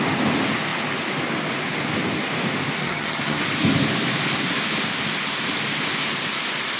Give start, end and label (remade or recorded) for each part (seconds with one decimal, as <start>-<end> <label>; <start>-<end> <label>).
0.0-2.8 recorded; 2.8-3.4 remade; 3.4-6.8 recorded